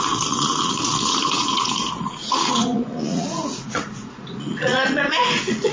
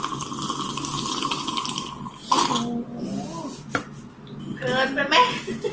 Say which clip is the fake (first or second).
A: first